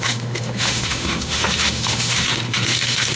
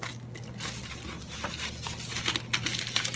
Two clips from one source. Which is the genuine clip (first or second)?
second